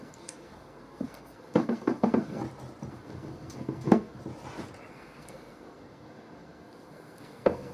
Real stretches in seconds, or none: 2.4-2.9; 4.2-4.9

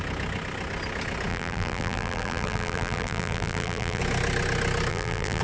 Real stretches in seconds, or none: 0.0-1.3; 4.0-4.9

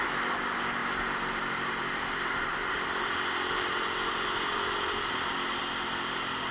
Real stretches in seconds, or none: 0.0-6.5